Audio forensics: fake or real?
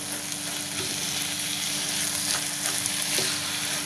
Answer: real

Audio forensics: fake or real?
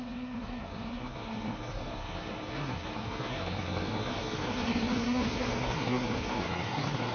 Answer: fake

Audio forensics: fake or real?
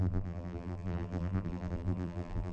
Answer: fake